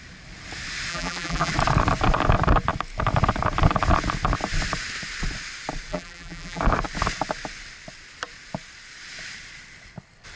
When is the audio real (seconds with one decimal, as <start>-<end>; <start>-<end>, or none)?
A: 0.0-0.9; 1.5-5.9; 6.6-10.4